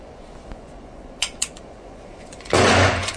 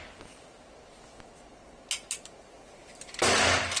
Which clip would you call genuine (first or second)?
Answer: second